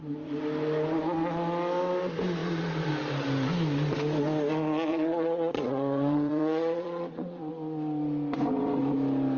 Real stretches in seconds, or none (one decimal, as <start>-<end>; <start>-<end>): 0.0-4.9; 7.5-9.4